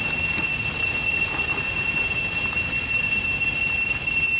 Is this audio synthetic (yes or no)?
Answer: no